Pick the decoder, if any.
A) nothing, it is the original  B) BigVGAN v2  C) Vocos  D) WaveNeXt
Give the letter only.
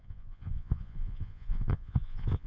C